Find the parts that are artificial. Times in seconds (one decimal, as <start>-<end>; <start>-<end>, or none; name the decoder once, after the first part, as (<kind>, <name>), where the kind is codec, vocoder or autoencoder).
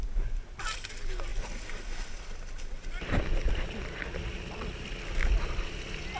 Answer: none